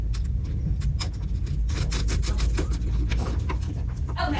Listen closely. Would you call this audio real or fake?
real